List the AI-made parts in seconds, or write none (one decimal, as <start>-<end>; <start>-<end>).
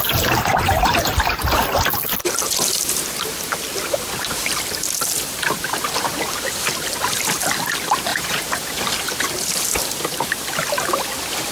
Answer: 8.1-8.8